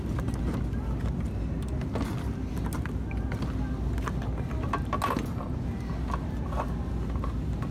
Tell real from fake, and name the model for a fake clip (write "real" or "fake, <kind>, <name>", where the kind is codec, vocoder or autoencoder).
real